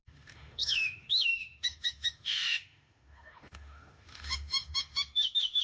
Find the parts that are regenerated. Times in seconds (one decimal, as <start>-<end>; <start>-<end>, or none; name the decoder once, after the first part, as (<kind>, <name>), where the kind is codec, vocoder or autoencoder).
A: 0.0-5.6 (autoencoder, DAC-VAE)

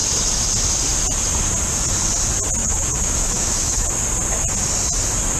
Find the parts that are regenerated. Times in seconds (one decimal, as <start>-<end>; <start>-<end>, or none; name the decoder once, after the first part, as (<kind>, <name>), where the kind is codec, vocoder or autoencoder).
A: 2.6-3.9 (autoencoder, DAC-VAE)